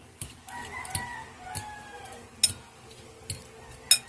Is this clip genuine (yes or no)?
yes